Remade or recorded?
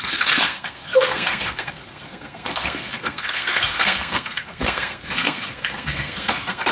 remade